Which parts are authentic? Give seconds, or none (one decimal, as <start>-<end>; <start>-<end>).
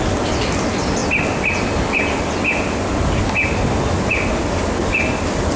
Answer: 0.0-5.6